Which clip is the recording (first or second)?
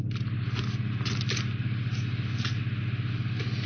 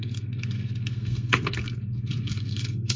first